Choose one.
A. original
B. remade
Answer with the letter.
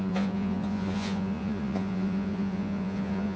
B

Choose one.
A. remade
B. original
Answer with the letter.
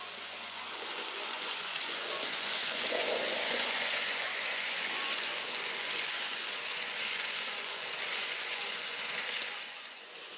A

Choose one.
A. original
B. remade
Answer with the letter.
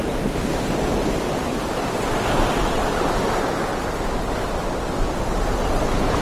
A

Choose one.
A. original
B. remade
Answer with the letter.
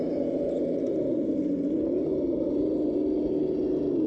A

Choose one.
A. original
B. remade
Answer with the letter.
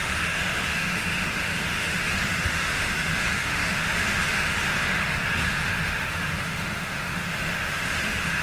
B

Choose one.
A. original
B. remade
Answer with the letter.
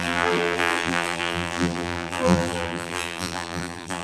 B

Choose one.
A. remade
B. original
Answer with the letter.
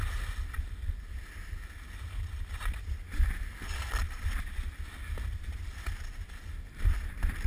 B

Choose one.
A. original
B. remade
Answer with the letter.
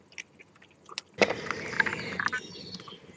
A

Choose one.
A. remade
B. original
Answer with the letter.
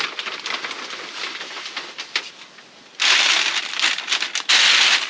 B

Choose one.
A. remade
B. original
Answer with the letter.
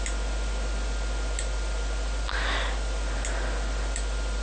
B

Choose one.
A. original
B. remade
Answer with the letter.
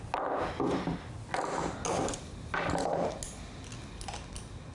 A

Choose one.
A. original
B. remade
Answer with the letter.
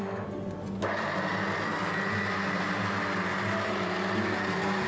A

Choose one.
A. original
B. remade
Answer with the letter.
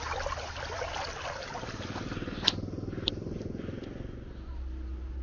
A